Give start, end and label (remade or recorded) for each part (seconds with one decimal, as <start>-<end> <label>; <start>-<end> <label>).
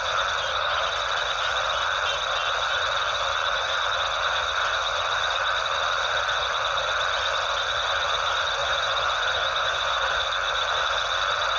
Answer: 0.0-8.6 recorded; 8.6-10.2 remade; 10.2-11.6 recorded